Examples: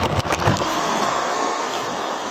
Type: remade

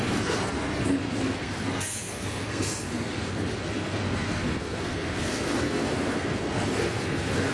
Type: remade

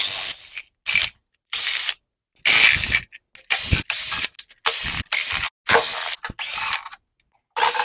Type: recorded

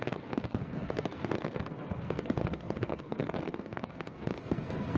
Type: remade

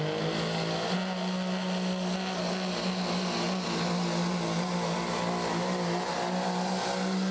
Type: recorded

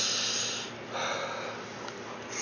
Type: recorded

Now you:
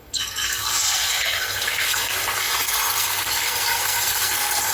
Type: remade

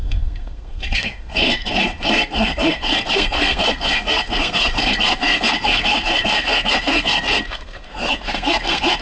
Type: remade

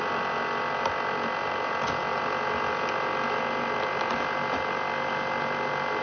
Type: recorded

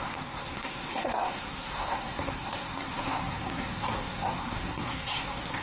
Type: remade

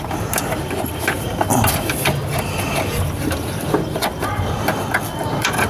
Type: recorded